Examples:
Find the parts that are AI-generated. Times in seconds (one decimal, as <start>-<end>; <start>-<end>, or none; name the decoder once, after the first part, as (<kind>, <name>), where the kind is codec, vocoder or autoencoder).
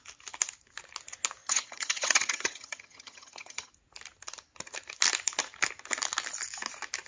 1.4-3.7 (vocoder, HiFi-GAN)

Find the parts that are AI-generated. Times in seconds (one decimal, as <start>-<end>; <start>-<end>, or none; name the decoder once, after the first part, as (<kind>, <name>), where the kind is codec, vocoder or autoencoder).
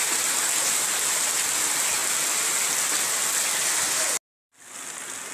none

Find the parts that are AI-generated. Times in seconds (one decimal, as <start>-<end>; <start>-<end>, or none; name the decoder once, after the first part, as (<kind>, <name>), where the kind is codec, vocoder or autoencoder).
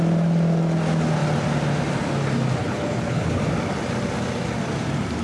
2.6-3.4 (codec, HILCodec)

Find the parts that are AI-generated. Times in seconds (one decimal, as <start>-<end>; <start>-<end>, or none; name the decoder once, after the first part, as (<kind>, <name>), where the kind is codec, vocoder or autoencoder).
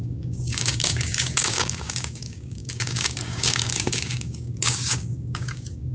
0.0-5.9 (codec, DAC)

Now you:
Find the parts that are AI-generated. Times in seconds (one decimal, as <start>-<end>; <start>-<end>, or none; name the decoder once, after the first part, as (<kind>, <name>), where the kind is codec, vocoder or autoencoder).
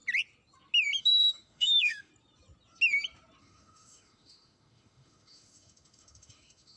1.0-2.1 (autoencoder, DAC-VAE); 3.4-6.8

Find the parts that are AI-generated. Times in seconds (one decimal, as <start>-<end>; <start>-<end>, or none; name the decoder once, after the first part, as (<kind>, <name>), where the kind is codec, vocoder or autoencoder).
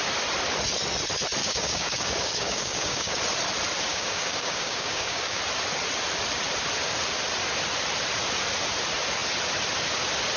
1.4-3.2 (codec, DAC); 3.9-5.4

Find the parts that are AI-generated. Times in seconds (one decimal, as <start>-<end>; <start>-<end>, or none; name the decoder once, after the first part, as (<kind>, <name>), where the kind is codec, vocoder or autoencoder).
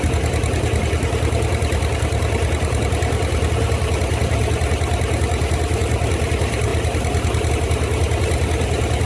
none